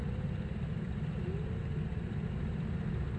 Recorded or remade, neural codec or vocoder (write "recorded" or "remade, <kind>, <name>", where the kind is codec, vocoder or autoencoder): recorded